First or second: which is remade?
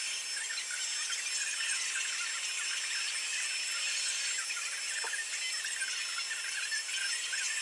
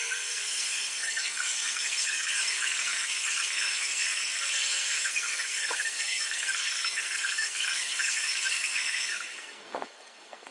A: second